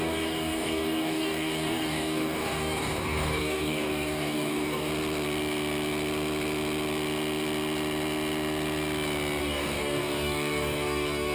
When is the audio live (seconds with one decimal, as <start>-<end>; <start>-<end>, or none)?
4.9-9.4